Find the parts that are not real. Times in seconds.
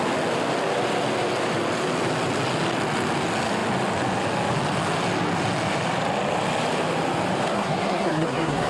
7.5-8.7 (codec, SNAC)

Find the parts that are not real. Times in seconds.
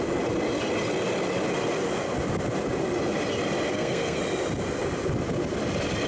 3.7-4.2 (codec, SNAC)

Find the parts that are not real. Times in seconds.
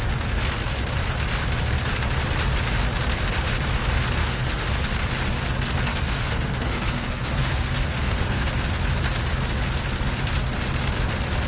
4.2-4.8 (codec, SNAC); 5.9-8.5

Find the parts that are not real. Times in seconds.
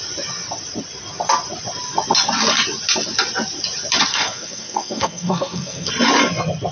4.1-5.9 (codec, SNAC)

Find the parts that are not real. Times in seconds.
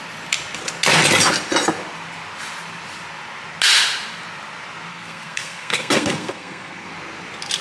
4.9-6.9 (codec, SNAC)